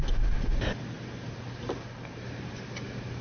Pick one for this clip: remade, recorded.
recorded